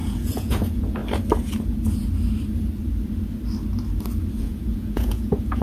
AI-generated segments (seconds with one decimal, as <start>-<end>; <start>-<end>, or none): 0.0-1.0; 4.4-5.6